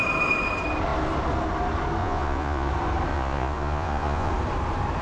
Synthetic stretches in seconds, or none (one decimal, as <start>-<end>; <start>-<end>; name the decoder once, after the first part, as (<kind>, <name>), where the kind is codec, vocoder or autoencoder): 2.0-2.7 (vocoder, Vocos); 3.1-4.3